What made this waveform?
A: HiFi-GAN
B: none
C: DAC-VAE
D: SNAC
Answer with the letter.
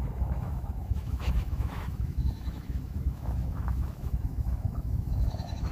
C